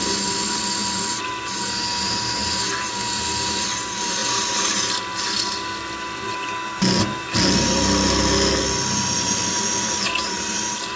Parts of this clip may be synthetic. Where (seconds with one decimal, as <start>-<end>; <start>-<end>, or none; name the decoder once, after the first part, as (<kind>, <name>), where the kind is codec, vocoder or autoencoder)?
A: none